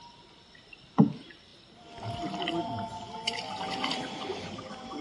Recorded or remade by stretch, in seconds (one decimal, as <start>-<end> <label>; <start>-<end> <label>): 0.0-5.0 recorded